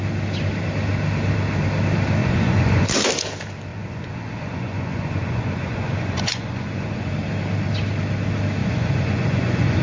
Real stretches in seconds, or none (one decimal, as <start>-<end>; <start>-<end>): 0.0-2.2; 2.8-3.7; 7.1-8.6